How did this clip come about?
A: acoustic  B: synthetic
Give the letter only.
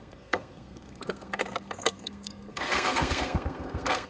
B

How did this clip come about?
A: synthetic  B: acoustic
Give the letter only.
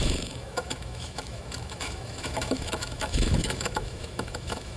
A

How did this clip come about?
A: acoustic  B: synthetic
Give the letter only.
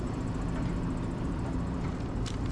B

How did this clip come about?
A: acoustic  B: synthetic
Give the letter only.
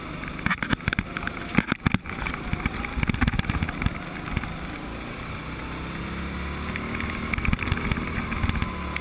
A